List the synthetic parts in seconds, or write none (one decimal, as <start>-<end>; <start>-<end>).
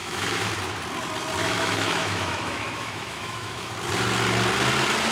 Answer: 0.0-0.5; 1.4-3.7